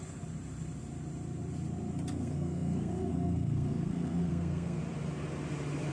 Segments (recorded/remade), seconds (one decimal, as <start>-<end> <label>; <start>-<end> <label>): 0.0-2.1 recorded; 2.1-4.8 remade; 4.8-5.9 recorded

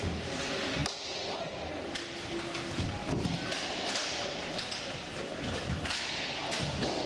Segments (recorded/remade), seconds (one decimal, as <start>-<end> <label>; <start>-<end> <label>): 0.0-7.1 recorded

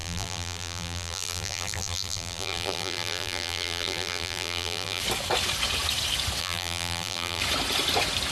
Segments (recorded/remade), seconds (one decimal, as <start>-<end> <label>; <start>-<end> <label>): 0.0-5.0 remade; 5.0-6.4 recorded; 6.4-7.4 remade; 7.4-8.3 recorded

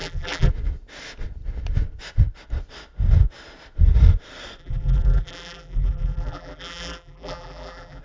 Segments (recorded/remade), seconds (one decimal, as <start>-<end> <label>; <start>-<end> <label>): 0.0-0.5 remade; 0.5-4.6 recorded; 4.6-8.0 remade

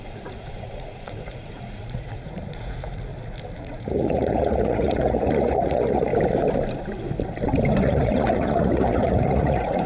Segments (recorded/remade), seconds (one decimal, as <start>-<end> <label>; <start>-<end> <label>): 0.0-3.1 remade; 3.1-3.6 recorded; 3.6-6.1 remade; 6.1-7.8 recorded; 7.8-9.9 remade

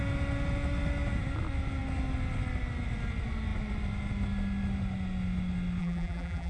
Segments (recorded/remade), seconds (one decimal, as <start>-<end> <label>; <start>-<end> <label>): 0.0-5.8 recorded; 5.8-6.5 remade

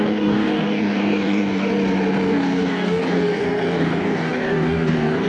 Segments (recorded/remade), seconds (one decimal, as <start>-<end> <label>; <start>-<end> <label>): 0.0-1.7 remade; 1.7-2.3 recorded; 2.3-5.3 remade